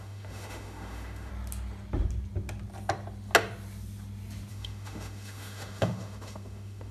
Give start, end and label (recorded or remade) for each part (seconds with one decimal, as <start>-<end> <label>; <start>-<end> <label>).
0.0-1.3 remade; 1.3-4.5 recorded; 4.5-6.9 remade